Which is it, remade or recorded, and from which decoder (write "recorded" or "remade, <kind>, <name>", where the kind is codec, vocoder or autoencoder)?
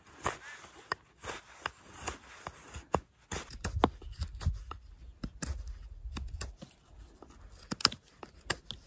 recorded